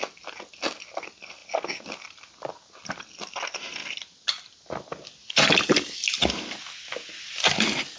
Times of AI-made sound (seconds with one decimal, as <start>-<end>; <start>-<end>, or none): none